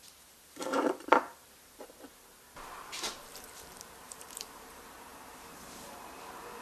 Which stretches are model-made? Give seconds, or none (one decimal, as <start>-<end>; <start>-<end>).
0.0-2.1; 2.8-6.6